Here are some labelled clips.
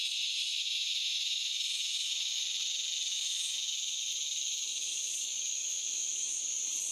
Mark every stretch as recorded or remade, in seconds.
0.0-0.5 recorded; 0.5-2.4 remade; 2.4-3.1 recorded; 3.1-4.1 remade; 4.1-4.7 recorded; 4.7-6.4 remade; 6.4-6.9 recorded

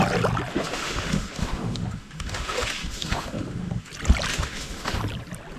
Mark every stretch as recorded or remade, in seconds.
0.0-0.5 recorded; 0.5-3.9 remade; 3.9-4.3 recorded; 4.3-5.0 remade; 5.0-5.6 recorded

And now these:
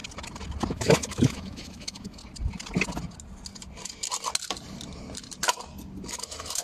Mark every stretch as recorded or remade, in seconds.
0.0-0.7 recorded; 0.7-2.2 remade; 2.2-6.1 recorded; 6.1-6.6 remade

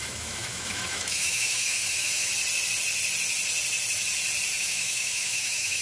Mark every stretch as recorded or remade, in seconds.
0.0-2.3 remade; 2.3-4.6 recorded; 4.6-5.8 remade

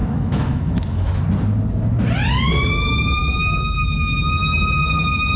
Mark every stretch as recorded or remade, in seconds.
0.0-1.2 remade; 1.2-3.4 recorded; 3.4-4.8 remade; 4.8-5.4 recorded

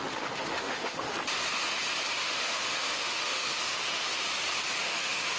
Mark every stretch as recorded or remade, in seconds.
0.0-1.1 remade; 1.1-2.2 recorded; 2.2-4.2 remade; 4.2-4.8 recorded; 4.8-5.4 remade

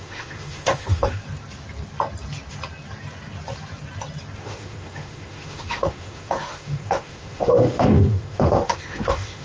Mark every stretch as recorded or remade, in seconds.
0.0-1.2 remade; 1.2-4.4 recorded; 4.4-9.4 remade

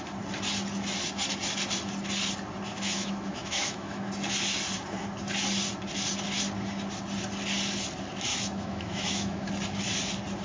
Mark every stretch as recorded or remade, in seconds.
0.0-2.7 recorded; 2.7-4.1 remade; 4.1-8.3 recorded; 8.3-9.5 remade; 9.5-10.4 recorded